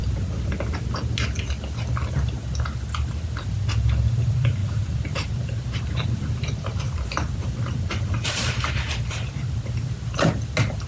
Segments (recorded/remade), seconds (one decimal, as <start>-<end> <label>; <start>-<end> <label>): 0.0-4.6 recorded; 4.6-8.7 remade; 8.7-10.9 recorded

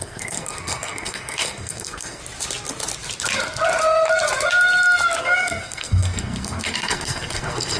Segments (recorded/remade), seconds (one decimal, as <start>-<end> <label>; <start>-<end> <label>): 0.0-2.2 remade; 2.2-5.2 recorded; 5.2-7.8 remade

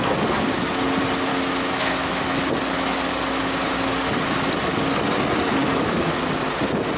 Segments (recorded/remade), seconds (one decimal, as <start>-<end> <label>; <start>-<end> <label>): 0.0-1.3 recorded; 1.3-2.4 remade; 2.4-5.6 recorded; 5.6-6.2 remade; 6.2-7.0 recorded

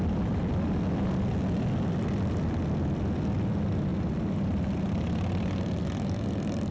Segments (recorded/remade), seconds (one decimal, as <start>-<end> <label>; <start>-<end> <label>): 0.0-6.7 recorded

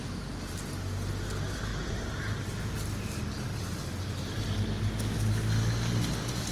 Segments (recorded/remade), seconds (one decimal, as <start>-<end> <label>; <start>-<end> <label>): 0.0-1.7 recorded; 1.7-2.5 remade; 2.5-3.5 recorded; 3.5-4.3 remade; 4.3-6.5 recorded

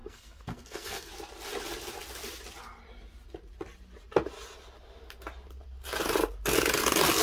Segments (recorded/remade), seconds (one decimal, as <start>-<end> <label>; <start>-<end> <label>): 0.0-1.1 remade; 1.1-7.2 recorded

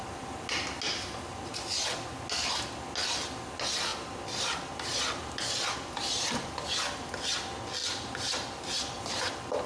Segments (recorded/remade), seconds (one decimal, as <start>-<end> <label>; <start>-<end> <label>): 0.0-3.9 recorded; 3.9-6.1 remade; 6.1-7.8 recorded; 7.8-9.7 remade

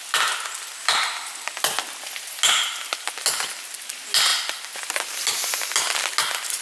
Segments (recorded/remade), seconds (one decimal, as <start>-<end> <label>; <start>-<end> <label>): 0.0-6.6 recorded